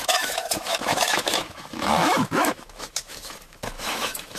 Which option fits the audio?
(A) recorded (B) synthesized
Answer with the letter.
B